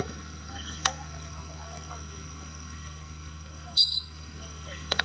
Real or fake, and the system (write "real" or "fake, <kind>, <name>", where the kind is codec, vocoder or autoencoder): fake, codec, SNAC